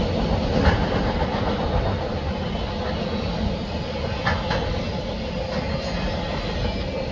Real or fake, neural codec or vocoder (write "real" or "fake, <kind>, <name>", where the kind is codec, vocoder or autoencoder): real